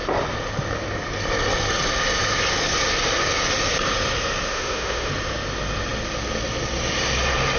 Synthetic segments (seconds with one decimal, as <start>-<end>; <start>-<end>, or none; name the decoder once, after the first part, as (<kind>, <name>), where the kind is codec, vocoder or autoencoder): 4.5-5.1 (autoencoder, DAC-VAE)